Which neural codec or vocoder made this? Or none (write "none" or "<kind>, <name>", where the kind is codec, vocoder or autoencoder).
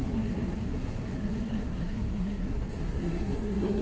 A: codec, SNAC